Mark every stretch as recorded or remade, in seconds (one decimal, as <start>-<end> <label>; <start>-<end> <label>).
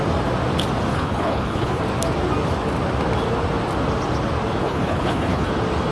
0.0-0.9 recorded; 0.9-1.8 remade; 1.8-4.6 recorded; 4.6-5.5 remade; 5.5-5.9 recorded